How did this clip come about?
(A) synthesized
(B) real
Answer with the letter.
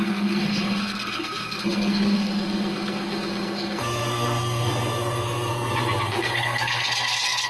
A